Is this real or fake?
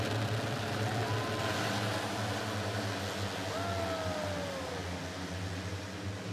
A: real